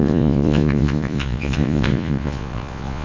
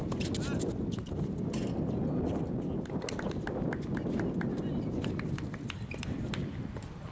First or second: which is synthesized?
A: first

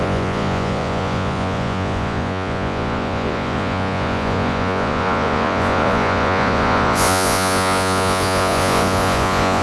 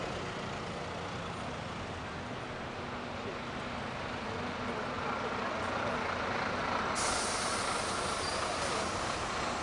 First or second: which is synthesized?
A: first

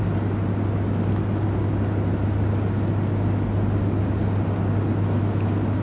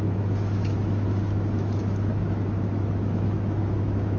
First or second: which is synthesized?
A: second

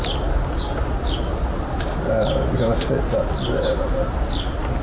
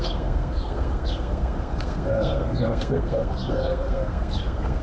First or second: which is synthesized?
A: second